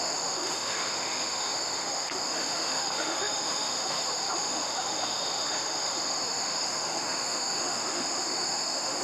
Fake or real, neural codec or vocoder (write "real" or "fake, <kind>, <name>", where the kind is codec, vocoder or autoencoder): fake, autoencoder, DAC-VAE